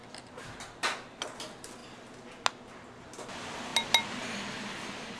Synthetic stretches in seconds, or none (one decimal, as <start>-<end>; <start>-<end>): none